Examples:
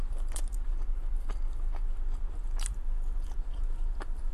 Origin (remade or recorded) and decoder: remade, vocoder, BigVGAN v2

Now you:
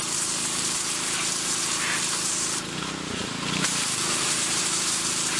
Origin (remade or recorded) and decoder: remade, vocoder, BigVGAN v2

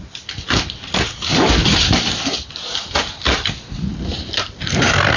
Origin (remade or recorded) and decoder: recorded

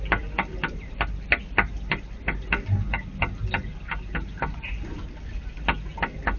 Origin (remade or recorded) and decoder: recorded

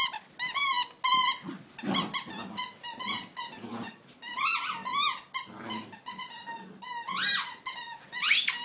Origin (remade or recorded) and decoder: recorded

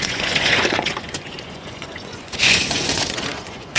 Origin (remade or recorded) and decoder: remade, vocoder, Vocos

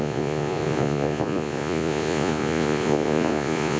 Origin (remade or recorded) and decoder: remade, vocoder, Vocos